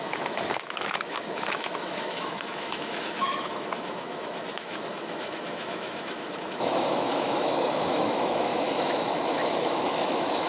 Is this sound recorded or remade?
remade